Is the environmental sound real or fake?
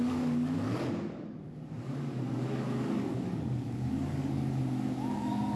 fake